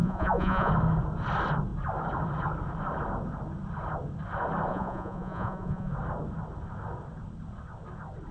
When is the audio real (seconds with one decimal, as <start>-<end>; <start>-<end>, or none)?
0.7-4.7; 5.9-8.3